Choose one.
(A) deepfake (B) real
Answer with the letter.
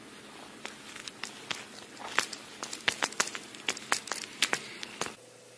B